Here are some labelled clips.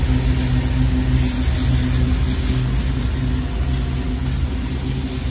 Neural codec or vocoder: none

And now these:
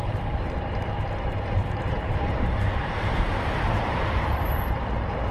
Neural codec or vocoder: vocoder, BigVGAN v2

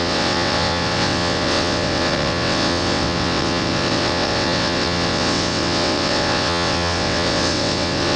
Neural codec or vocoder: vocoder, WaveNeXt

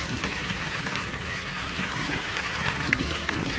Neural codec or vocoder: codec, SNAC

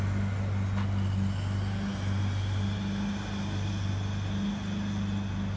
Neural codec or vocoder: none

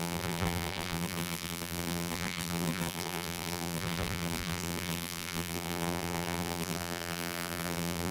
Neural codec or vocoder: vocoder, BigVGAN v2